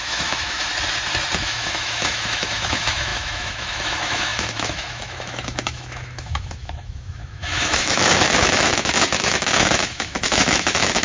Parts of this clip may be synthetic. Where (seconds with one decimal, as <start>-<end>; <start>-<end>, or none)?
0.0-0.7; 1.4-11.0